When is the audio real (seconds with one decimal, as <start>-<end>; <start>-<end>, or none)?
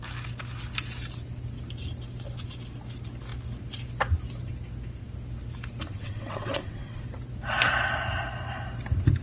0.0-5.9; 7.0-9.2